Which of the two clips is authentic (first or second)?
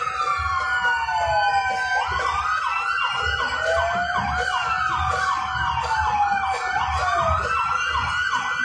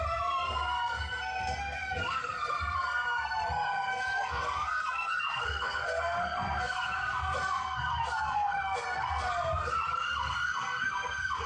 first